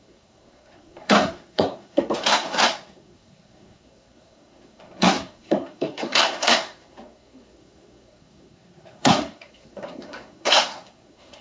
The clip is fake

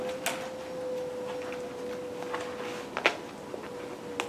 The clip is real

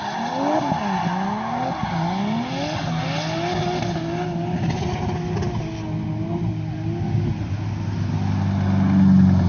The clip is real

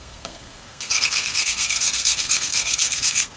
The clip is fake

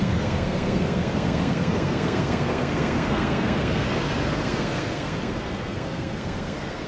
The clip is fake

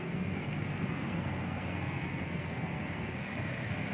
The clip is fake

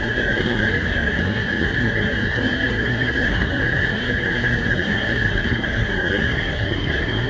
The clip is fake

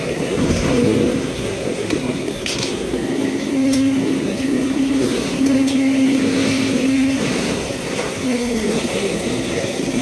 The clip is fake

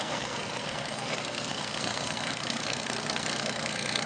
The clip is fake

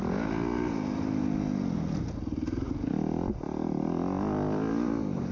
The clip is real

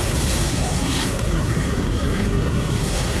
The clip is fake